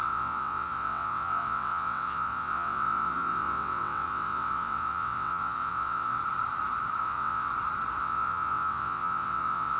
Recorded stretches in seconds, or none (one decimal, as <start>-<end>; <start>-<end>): 6.2-7.0; 7.5-8.0